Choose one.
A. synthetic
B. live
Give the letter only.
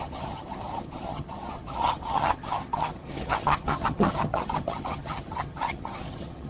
A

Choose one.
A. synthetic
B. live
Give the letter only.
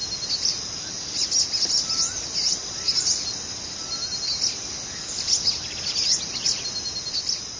B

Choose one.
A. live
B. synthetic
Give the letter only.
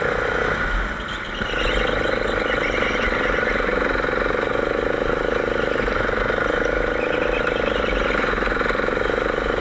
A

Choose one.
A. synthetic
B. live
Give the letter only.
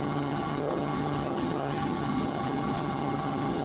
A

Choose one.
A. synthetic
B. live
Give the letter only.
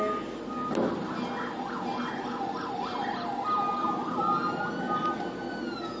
B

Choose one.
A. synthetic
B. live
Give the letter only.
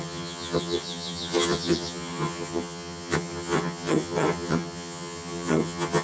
A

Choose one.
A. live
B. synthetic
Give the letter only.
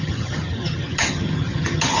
B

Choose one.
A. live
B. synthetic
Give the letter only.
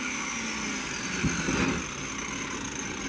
A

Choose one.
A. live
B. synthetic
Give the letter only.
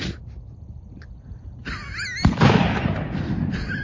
A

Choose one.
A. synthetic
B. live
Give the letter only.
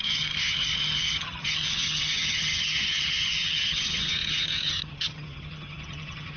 A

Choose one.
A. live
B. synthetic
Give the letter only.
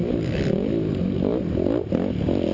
A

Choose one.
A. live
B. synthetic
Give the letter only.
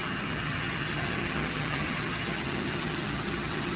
B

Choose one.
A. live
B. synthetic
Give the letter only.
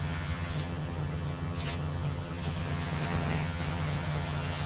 B